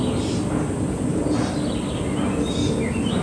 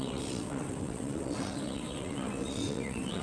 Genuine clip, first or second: first